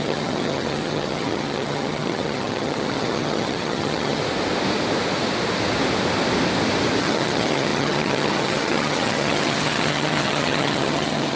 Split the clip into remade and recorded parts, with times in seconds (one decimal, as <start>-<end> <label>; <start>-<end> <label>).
0.0-4.2 remade; 4.2-7.0 recorded; 7.0-11.4 remade